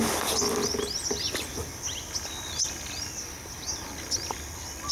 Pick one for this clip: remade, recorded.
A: recorded